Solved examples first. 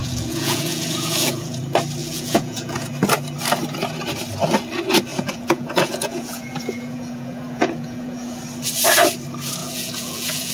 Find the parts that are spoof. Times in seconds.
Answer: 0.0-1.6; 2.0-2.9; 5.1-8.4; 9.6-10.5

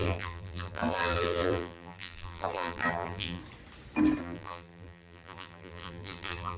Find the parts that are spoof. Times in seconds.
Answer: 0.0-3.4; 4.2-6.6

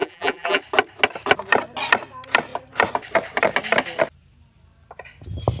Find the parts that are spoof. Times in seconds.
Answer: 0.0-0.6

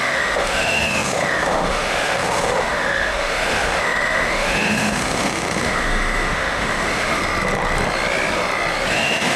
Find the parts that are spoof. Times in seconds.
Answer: 0.0-7.2; 8.9-9.4